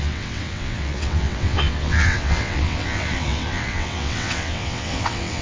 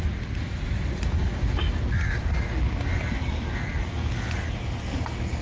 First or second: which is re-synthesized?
first